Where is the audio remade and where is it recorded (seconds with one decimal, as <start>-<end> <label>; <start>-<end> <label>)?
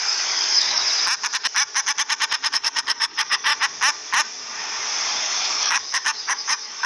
0.0-0.8 remade; 0.8-2.5 recorded; 2.5-3.5 remade; 3.5-5.2 recorded; 5.2-6.9 remade